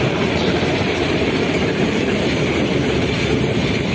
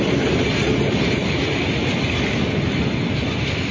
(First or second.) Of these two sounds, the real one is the second